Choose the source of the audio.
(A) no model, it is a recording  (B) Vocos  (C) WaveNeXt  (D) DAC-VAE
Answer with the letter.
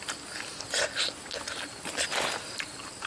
A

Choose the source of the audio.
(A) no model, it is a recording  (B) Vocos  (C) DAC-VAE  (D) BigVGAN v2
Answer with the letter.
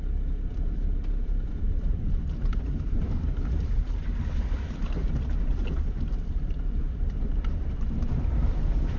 D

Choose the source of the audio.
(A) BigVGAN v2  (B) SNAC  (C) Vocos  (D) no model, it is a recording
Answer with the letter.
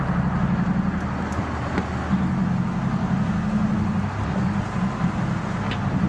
D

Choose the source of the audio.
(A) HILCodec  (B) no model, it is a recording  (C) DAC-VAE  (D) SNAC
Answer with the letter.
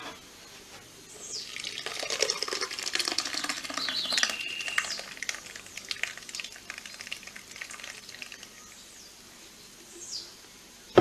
B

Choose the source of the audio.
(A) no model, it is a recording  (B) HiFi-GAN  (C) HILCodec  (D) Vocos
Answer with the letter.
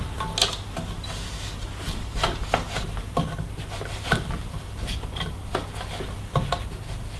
A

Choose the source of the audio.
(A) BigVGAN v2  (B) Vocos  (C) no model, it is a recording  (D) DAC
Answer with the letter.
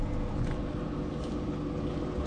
C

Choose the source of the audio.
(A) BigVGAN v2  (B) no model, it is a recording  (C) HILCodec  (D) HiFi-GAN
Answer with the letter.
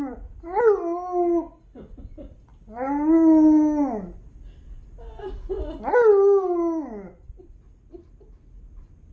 B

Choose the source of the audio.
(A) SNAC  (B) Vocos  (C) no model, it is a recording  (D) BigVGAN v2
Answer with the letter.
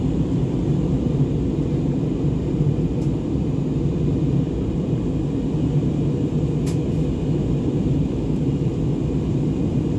C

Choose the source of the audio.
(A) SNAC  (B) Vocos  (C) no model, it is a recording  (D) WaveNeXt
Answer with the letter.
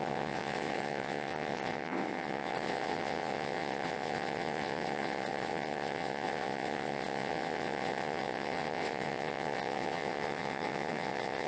D